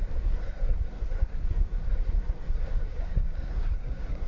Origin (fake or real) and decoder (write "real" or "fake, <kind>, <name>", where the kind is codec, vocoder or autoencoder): fake, codec, SNAC